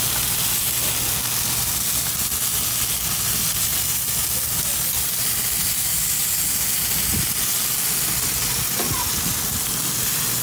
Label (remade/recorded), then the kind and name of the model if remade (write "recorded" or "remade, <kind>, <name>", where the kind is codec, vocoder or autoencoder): recorded